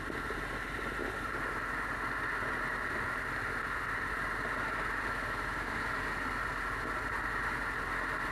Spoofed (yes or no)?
no